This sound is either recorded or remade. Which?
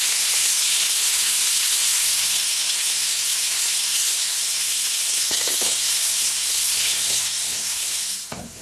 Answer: remade